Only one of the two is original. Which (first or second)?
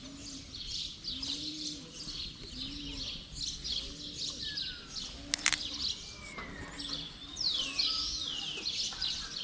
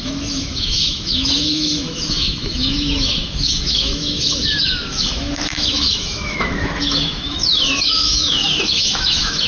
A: first